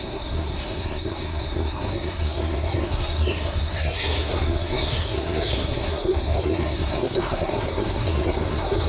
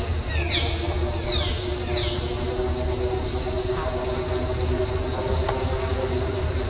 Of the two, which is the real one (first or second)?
second